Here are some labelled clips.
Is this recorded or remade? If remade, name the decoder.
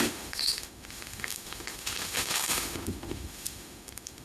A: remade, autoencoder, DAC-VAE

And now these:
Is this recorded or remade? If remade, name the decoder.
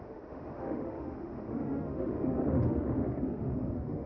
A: remade, autoencoder, DAC-VAE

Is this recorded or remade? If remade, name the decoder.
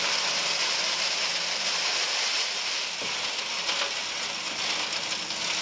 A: recorded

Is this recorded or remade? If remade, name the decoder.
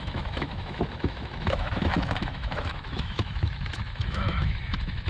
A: remade, autoencoder, DAC-VAE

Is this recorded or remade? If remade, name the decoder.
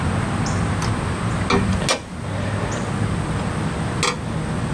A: recorded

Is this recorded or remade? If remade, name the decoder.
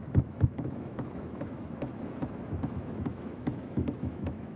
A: remade, autoencoder, DAC-VAE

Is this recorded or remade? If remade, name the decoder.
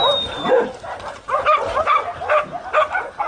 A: recorded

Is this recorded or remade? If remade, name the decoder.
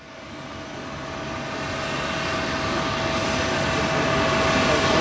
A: recorded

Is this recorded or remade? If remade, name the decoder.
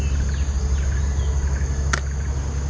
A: recorded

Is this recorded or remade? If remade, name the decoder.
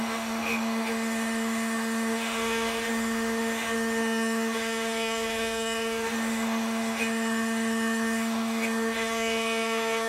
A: remade, autoencoder, DAC-VAE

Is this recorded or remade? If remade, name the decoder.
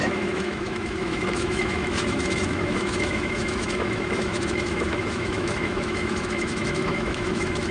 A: remade, autoencoder, DAC-VAE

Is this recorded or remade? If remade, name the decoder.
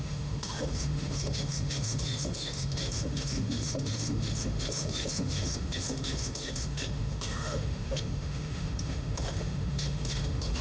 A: remade, autoencoder, DAC-VAE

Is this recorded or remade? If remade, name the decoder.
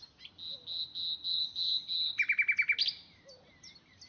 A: recorded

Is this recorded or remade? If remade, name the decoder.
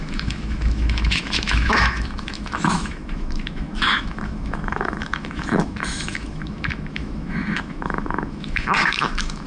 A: remade, autoencoder, DAC-VAE